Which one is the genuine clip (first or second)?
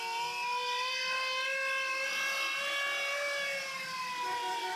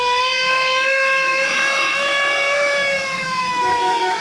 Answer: first